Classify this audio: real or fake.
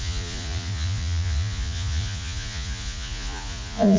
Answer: fake